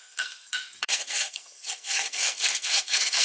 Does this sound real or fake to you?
fake